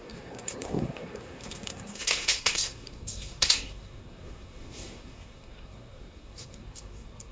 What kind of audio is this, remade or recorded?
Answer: remade